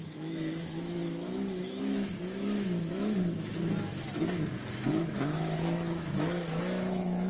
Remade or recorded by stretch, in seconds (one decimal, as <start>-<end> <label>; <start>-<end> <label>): 0.0-3.5 remade; 3.5-4.7 recorded; 4.7-7.3 remade